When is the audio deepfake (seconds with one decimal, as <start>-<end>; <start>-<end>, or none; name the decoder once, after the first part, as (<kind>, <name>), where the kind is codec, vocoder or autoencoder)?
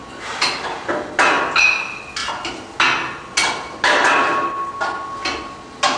none